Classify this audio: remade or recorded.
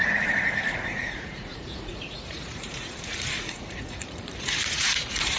remade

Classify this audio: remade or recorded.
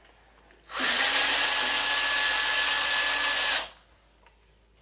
recorded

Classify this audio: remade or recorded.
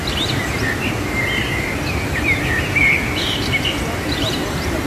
recorded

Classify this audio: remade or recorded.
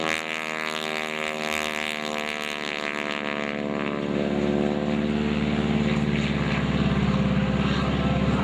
recorded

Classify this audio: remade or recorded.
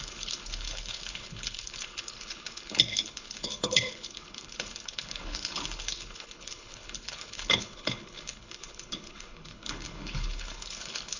remade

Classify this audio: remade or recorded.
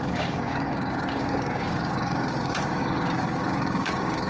remade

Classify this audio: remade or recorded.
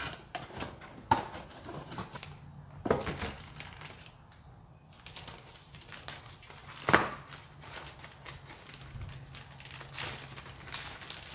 recorded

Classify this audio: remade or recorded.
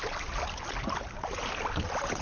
recorded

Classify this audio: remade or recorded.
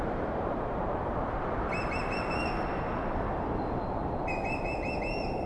remade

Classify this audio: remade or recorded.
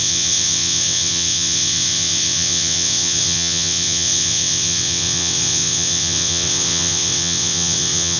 remade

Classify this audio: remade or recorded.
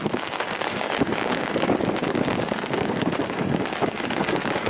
remade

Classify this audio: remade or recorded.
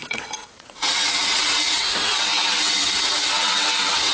remade